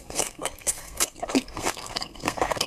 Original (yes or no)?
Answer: no